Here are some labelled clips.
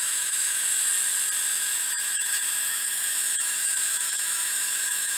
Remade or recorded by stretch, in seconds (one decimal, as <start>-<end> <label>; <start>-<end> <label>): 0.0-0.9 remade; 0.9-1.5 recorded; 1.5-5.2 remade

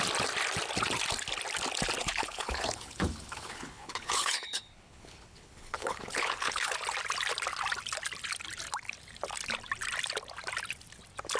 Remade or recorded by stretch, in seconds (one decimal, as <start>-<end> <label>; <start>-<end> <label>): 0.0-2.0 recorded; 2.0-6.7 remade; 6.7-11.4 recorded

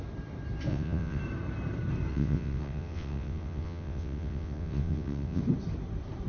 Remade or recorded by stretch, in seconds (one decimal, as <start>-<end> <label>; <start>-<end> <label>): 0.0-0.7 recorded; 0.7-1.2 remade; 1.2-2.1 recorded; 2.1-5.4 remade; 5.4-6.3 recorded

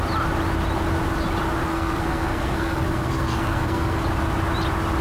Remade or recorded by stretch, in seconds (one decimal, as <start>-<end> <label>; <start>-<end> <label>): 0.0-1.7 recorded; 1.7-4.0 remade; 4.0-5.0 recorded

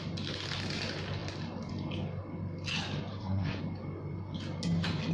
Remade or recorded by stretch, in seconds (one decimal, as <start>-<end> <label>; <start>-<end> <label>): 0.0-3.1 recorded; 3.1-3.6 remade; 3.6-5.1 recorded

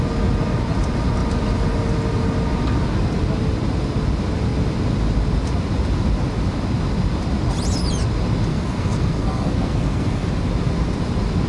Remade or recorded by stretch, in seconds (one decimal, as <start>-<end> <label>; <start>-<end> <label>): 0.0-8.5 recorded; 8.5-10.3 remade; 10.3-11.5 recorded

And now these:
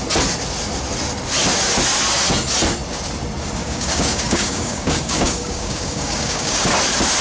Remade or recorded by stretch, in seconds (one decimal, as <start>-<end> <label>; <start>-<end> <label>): 0.0-3.6 recorded; 3.6-6.7 remade; 6.7-7.2 recorded

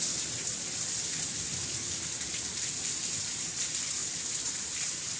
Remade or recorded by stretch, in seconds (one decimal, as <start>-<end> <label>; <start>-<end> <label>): 0.0-1.6 remade; 1.6-2.4 recorded; 2.4-5.2 remade